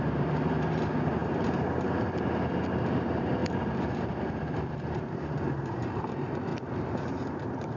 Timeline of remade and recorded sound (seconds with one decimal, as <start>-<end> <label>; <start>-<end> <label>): 0.0-7.8 remade